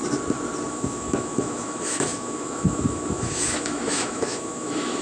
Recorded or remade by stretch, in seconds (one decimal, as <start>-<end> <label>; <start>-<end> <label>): 0.0-0.7 recorded; 0.7-5.0 remade